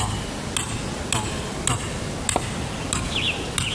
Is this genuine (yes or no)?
yes